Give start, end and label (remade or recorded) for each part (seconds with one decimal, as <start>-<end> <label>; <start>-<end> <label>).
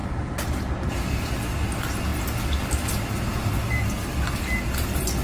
0.0-1.2 remade; 1.2-5.2 recorded